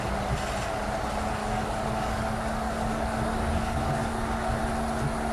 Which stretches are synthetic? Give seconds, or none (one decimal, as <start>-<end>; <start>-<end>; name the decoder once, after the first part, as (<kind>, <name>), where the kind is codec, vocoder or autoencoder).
1.4-4.6 (codec, DAC)